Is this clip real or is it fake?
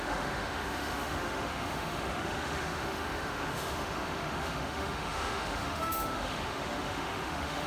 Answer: fake